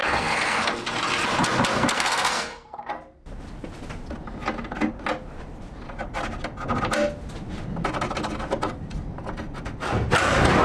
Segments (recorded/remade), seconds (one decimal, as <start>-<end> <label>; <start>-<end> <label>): 0.0-0.7 remade; 0.7-1.7 recorded; 1.7-2.9 remade; 2.9-10.6 recorded